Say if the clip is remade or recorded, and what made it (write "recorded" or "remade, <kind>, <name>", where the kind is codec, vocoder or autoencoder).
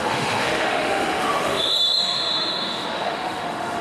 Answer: remade, autoencoder, DAC-VAE